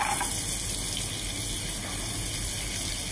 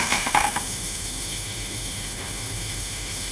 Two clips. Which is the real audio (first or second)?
first